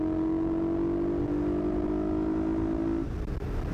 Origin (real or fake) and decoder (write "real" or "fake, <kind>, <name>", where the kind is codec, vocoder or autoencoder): real